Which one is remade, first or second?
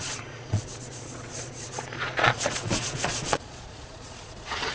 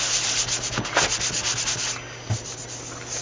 first